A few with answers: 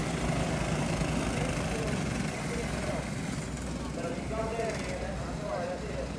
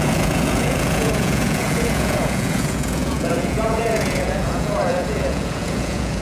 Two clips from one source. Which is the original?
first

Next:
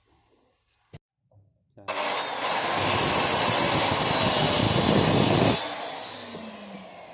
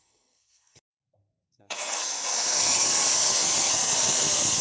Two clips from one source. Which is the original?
first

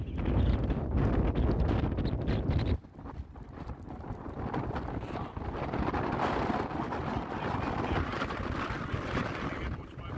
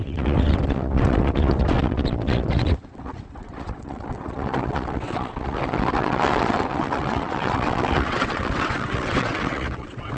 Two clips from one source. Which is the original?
first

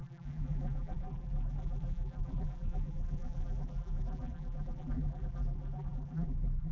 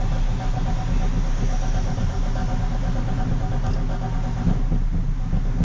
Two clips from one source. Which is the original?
second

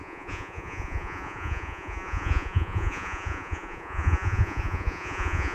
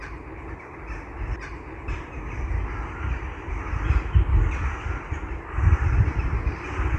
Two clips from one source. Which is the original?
second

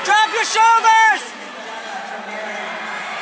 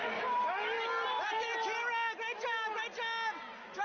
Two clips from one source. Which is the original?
second